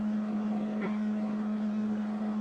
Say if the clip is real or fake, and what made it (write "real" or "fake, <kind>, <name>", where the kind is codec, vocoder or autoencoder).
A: fake, codec, SNAC